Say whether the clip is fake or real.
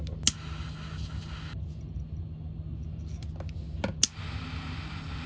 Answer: real